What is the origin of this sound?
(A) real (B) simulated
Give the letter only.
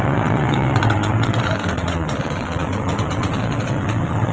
B